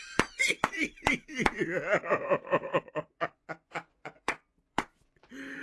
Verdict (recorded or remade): remade